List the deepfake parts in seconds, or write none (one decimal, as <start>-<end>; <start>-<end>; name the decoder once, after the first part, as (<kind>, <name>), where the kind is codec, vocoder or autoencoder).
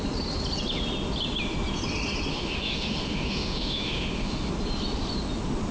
2.3-4.5 (autoencoder, DAC-VAE)